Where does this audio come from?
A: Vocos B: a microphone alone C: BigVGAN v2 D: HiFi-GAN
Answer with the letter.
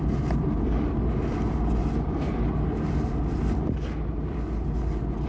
B